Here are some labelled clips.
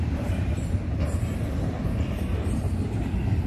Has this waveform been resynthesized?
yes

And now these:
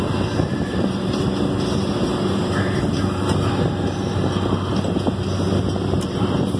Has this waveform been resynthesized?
no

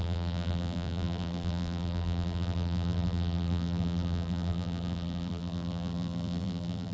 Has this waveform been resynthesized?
yes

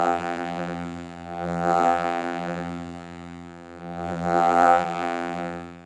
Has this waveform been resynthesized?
yes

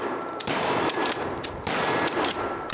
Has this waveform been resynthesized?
yes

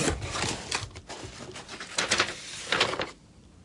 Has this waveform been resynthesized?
yes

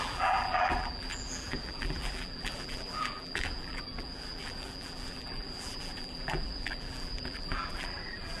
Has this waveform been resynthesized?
yes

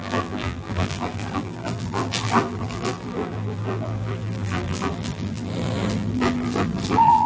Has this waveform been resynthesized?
yes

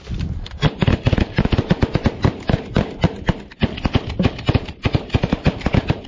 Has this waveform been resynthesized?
yes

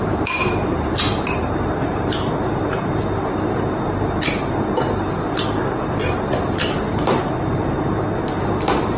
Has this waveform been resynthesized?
yes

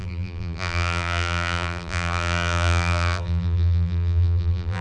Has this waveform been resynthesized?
yes